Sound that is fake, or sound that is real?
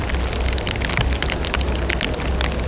real